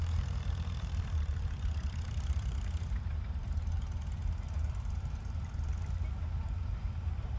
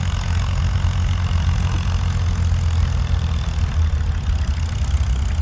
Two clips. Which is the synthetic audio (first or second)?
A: first